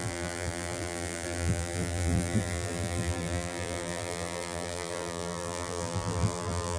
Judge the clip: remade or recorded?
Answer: remade